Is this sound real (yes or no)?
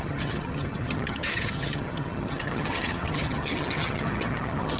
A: no